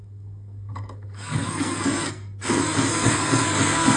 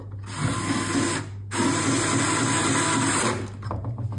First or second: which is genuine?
second